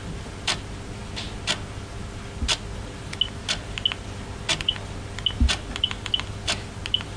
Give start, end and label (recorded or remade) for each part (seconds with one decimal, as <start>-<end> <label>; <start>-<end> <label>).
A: 0.0-7.2 recorded